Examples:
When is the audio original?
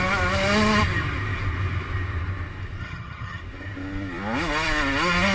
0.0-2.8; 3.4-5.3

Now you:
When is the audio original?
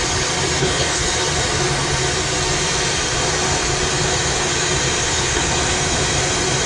0.0-0.6; 1.0-5.0; 5.4-6.7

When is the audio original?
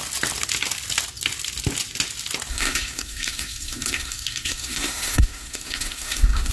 0.0-2.5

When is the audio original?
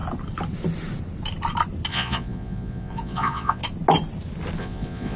0.0-1.9; 3.6-4.6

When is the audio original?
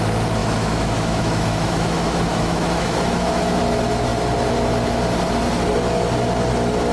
0.0-0.4; 3.6-6.9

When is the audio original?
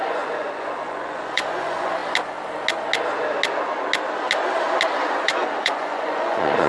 2.0-5.0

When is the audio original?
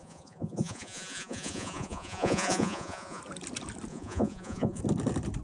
3.2-3.9; 4.8-5.4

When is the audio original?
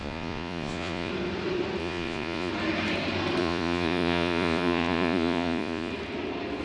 1.1-1.8; 2.5-3.4; 5.9-6.6